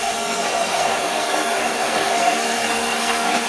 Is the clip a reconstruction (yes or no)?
yes